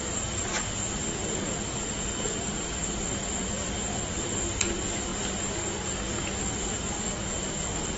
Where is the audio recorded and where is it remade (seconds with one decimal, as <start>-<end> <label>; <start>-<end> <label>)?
0.0-3.9 remade; 3.9-5.1 recorded; 5.1-7.4 remade; 7.4-8.0 recorded